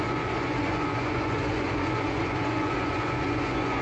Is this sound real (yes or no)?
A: no